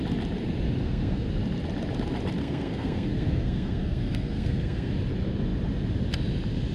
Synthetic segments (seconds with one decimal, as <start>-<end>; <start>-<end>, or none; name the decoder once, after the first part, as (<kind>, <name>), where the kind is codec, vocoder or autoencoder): 0.8-1.3 (codec, SNAC); 2.4-4.9